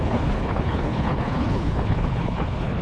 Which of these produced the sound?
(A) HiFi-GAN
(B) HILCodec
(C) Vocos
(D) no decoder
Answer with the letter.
B